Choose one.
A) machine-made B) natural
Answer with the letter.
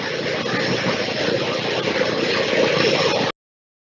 B